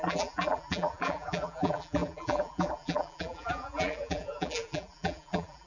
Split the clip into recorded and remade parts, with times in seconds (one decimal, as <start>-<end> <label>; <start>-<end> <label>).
0.0-5.7 remade